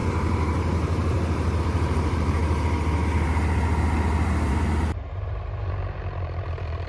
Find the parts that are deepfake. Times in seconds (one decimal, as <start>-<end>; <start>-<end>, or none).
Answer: 0.0-2.4; 4.5-6.9